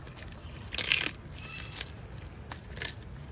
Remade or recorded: recorded